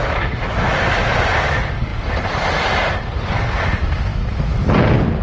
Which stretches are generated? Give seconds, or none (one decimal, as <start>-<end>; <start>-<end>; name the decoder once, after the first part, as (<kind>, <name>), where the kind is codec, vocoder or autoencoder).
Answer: 0.0-0.8 (autoencoder, DAC-VAE); 4.1-4.6